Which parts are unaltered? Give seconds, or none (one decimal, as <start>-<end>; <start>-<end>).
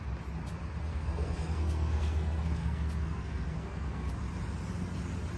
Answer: 0.0-0.9; 4.1-5.4